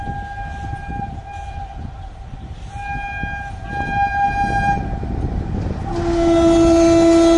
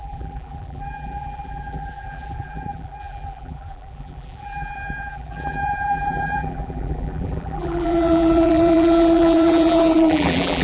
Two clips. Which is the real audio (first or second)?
first